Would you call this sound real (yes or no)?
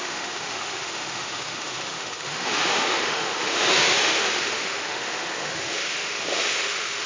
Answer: no